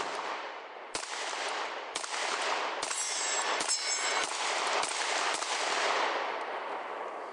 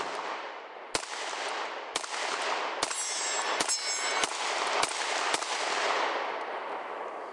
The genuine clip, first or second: second